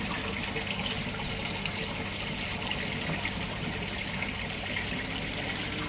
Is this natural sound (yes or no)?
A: yes